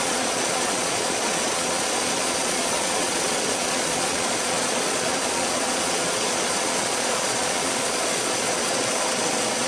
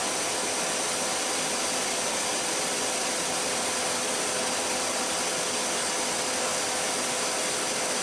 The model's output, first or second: first